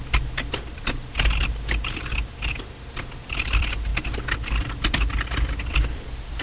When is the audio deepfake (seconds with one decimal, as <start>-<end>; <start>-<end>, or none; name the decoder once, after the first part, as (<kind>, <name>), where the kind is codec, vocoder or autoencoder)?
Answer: 0.0-3.9 (vocoder, BigVGAN v2); 5.9-6.4